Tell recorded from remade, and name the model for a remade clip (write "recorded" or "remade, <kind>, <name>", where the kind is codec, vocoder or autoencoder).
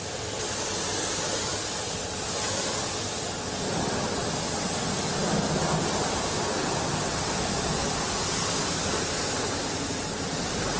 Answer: recorded